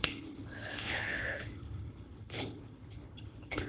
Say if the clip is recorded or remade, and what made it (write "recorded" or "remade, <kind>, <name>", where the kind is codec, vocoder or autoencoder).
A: remade, codec, HILCodec